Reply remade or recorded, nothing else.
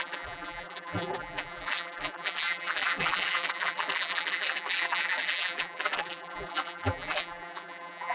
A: remade